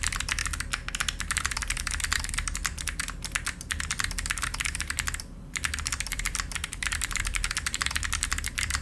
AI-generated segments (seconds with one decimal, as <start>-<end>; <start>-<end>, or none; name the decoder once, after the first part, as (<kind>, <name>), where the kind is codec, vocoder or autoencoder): 0.0-0.4 (vocoder, BigVGAN v2); 0.9-3.0; 3.7-8.8